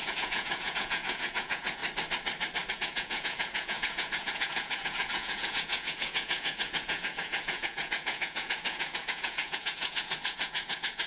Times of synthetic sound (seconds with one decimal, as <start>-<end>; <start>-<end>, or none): 0.0-1.8; 2.7-11.1